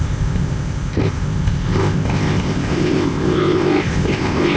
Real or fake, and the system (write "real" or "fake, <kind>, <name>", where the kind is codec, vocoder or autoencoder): fake, codec, ZipCodec